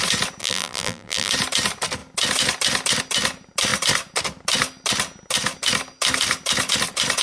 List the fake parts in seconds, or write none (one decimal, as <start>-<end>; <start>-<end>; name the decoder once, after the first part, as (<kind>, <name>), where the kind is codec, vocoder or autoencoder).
0.4-1.3 (vocoder, BigVGAN v2)